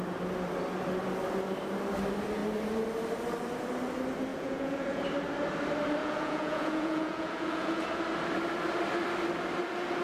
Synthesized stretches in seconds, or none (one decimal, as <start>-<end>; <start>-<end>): 4.3-5.0; 6.0-8.0